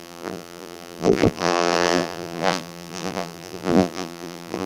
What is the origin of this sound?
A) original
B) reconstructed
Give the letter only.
B